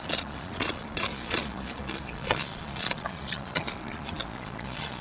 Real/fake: fake